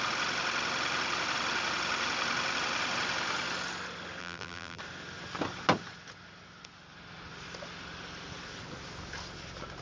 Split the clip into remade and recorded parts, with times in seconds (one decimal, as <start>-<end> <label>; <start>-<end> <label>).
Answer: 0.0-4.2 recorded; 4.2-4.8 remade; 4.8-9.8 recorded